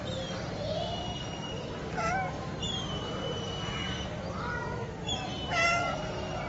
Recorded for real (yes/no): yes